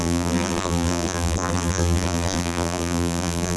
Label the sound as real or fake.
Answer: fake